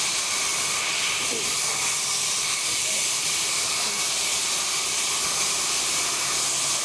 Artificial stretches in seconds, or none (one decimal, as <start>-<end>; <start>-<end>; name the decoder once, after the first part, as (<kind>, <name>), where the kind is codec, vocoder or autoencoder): 0.5-3.6 (vocoder, BigVGAN v2)